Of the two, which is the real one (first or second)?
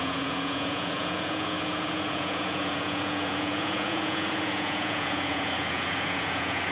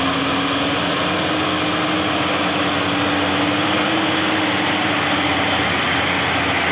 second